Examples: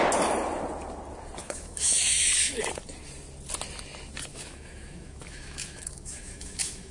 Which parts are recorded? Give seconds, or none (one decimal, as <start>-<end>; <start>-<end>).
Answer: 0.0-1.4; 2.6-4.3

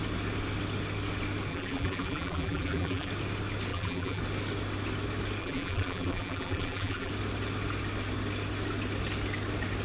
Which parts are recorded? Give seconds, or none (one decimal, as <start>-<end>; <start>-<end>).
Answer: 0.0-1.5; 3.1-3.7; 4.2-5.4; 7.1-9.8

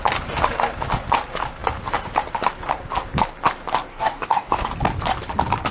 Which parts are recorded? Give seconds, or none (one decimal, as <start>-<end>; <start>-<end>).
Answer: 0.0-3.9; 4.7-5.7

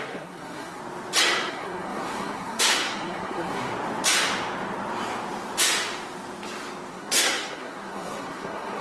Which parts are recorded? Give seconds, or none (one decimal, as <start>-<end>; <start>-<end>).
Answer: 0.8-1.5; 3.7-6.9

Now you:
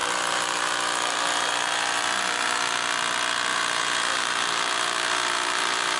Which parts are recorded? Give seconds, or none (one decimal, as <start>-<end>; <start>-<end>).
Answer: 2.6-3.5

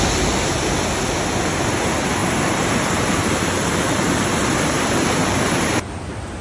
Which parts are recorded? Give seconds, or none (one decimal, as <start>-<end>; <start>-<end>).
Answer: 0.0-2.2; 6.0-6.4

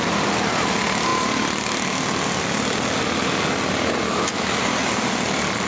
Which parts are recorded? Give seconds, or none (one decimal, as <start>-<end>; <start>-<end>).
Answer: 0.0-5.7

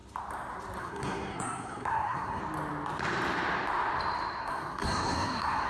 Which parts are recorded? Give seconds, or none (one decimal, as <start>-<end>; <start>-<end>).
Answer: 0.0-0.8; 2.4-4.4